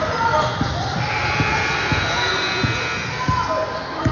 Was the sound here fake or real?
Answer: real